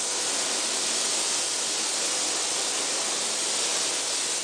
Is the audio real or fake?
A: real